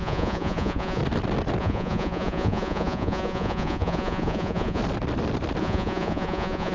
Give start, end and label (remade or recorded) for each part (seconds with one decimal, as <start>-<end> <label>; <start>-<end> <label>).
0.0-1.0 remade; 1.0-1.6 recorded; 1.6-4.8 remade; 4.8-5.6 recorded; 5.6-6.7 remade